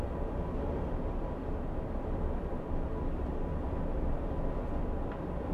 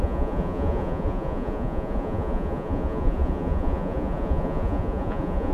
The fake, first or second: second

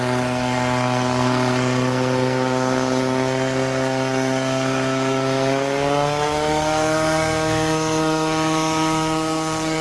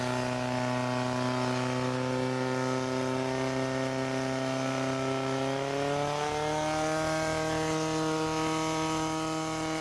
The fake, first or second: first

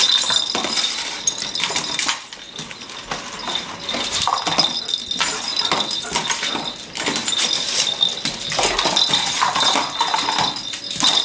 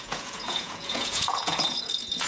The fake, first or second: second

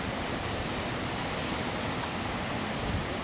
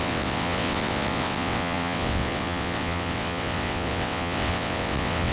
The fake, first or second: second